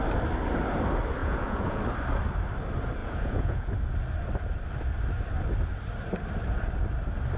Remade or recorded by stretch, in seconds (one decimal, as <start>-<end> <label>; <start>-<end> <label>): 0.0-1.2 recorded; 1.2-1.8 remade; 1.8-3.0 recorded; 3.0-3.7 remade; 3.7-7.4 recorded